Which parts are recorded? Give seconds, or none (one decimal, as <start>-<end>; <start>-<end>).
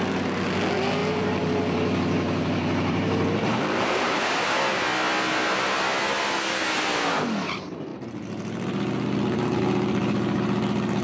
0.0-1.0; 4.2-11.0